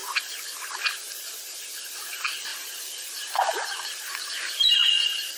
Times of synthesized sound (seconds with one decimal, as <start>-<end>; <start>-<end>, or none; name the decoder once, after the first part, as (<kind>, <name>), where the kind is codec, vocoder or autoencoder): 2.0-4.8 (vocoder, BigVGAN v2)